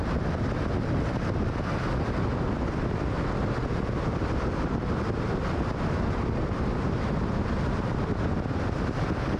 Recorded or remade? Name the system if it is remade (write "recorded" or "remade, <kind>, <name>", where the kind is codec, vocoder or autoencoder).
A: recorded